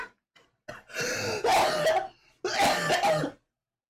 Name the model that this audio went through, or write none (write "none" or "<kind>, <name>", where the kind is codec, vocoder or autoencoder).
none